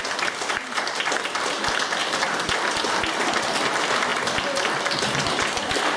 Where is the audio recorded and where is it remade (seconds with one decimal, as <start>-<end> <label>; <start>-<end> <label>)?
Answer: 0.0-2.0 recorded; 2.0-3.2 remade; 3.2-4.1 recorded; 4.1-4.7 remade; 4.7-6.0 recorded